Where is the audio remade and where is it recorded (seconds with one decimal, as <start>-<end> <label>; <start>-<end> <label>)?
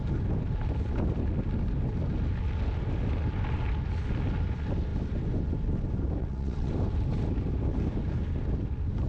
0.0-6.2 recorded; 6.2-6.7 remade; 6.7-9.1 recorded